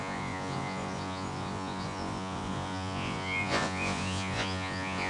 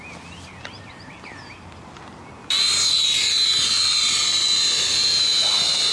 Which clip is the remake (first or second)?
first